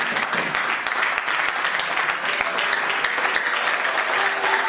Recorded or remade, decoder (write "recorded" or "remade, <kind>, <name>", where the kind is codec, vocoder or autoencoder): recorded